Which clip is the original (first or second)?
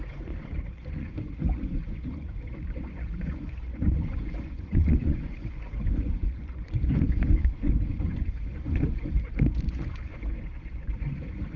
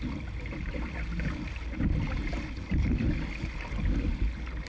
second